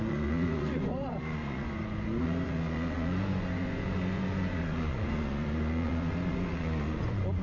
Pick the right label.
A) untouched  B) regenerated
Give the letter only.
B